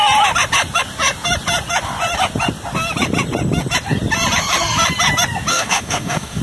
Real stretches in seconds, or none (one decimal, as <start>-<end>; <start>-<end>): 0.0-5.5